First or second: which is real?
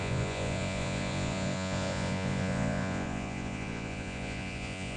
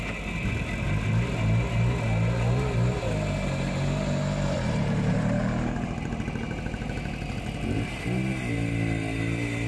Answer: second